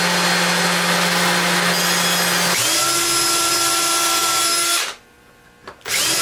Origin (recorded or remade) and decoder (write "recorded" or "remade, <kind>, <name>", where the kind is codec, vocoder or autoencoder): recorded